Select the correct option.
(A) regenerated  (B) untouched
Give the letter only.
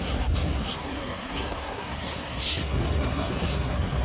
A